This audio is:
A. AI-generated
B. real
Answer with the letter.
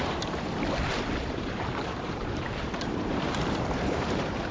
A